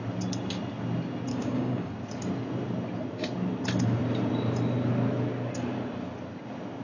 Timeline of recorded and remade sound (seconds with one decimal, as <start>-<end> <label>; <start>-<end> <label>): 0.0-1.3 recorded; 1.3-1.9 remade; 1.9-6.8 recorded